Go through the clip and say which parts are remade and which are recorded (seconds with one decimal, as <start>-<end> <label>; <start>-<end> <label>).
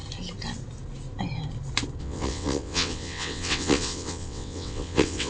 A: 0.0-2.0 recorded; 2.0-5.3 remade